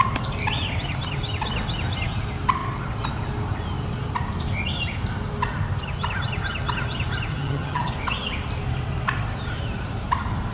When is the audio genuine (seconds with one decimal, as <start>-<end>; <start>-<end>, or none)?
0.0-7.3; 7.9-10.5